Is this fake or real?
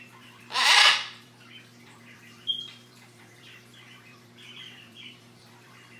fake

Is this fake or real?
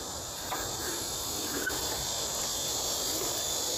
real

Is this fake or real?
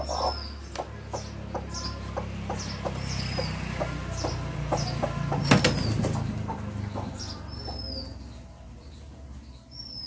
real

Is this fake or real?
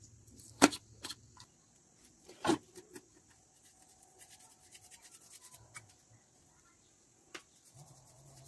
fake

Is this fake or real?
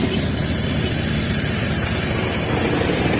real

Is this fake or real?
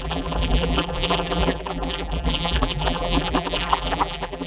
fake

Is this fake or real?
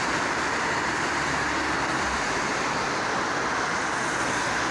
fake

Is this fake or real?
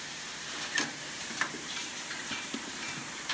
fake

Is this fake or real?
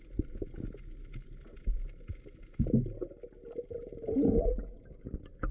real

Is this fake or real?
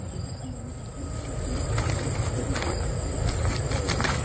real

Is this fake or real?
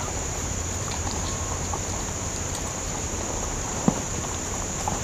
fake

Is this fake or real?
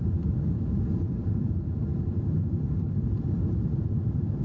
fake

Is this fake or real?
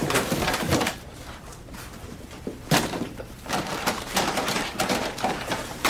fake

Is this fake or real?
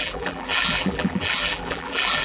fake